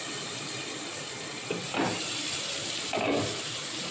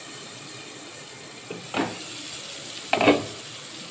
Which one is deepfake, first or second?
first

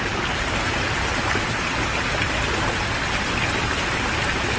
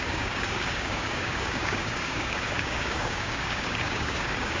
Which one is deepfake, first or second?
second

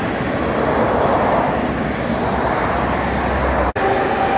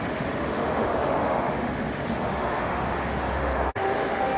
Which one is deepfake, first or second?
second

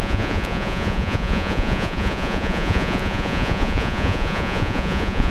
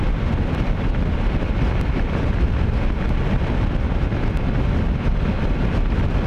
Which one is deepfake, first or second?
first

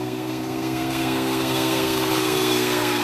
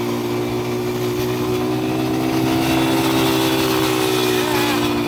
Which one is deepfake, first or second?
first